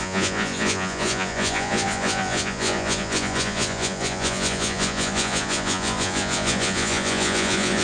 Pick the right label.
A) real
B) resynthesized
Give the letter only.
B